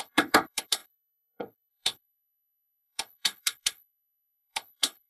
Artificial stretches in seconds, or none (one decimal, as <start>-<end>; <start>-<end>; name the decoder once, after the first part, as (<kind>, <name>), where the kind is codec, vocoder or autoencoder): 0.0-5.1 (codec, HILCodec)